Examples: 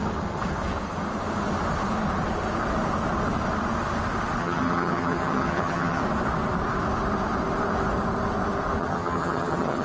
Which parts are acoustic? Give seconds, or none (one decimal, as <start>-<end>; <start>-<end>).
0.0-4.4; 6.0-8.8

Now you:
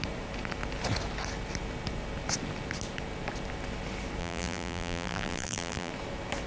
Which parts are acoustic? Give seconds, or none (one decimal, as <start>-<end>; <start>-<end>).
0.0-4.2; 5.9-6.5

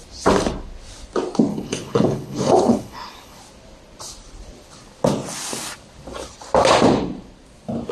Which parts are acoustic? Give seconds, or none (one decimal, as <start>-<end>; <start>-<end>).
0.0-1.5; 3.4-7.9

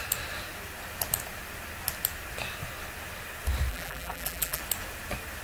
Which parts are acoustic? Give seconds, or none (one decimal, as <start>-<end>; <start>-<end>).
0.0-3.7; 4.6-5.4

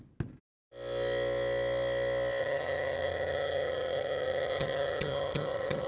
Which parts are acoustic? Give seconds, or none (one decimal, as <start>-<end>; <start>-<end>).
0.0-2.4

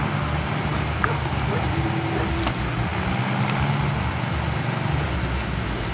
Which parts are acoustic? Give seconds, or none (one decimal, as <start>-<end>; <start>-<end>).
0.0-5.9

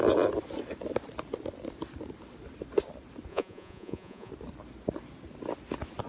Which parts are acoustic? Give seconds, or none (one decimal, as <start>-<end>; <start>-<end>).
0.0-3.3; 4.3-6.1

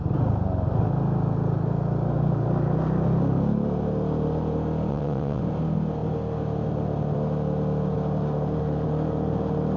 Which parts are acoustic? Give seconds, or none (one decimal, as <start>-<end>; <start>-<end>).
0.0-4.9; 5.4-9.8